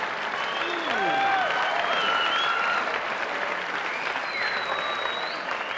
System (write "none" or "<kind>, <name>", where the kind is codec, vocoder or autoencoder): none